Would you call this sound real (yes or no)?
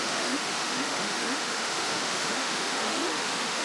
no